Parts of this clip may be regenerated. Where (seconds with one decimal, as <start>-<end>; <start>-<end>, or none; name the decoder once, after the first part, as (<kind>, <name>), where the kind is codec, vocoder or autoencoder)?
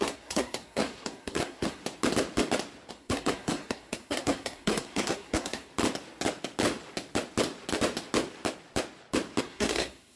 0.0-1.8 (codec, SNAC); 2.9-5.7; 9.4-10.2